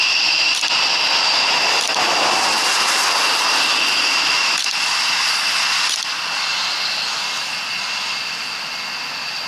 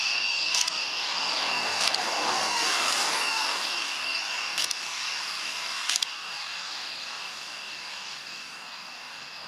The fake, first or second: second